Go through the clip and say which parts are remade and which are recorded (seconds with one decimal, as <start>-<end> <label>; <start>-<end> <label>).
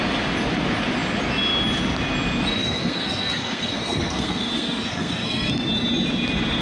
0.0-2.6 recorded; 2.6-5.5 remade; 5.5-6.6 recorded